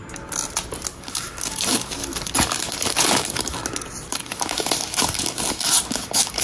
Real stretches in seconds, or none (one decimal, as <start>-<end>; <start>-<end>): 0.0-0.9; 3.6-4.1